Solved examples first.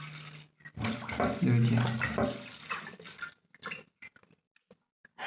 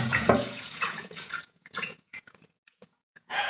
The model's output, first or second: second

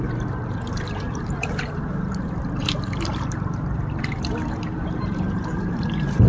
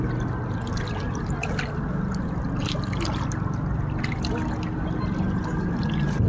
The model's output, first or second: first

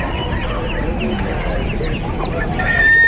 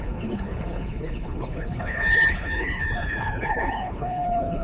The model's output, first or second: second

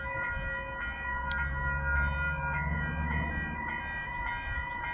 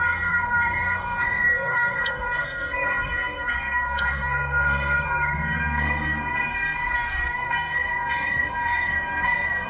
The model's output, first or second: second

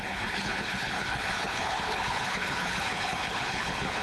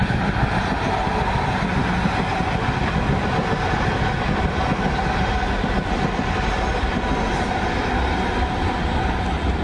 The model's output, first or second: first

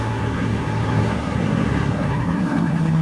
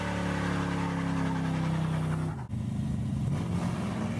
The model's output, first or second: first